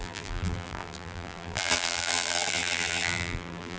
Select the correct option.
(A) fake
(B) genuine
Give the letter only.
A